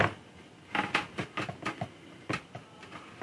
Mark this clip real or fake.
real